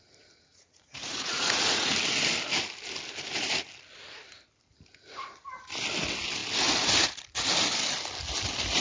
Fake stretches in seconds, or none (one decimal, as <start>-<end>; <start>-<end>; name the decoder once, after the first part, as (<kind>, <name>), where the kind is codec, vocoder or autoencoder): 0.5-1.9 (vocoder, Vocos)